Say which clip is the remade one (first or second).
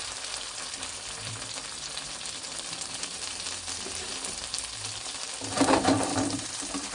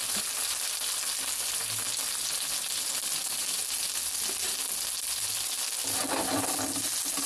first